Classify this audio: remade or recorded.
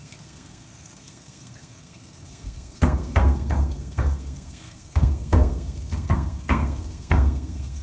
remade